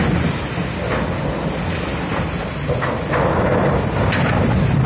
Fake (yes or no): no